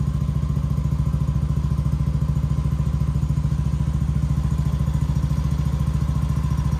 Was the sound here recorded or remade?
recorded